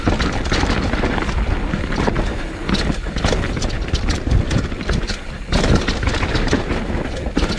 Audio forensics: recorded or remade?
recorded